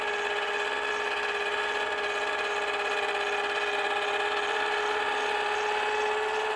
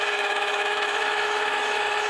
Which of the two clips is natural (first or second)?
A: first